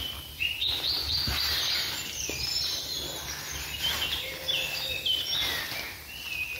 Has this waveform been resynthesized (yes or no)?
no